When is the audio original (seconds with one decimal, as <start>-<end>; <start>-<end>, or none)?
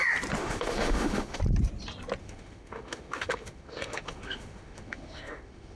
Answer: 0.0-0.4; 1.4-2.2